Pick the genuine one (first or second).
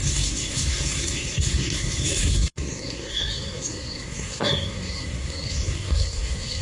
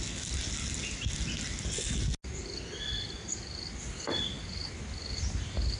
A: second